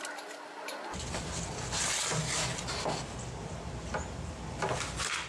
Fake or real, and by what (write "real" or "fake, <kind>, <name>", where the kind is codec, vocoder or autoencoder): real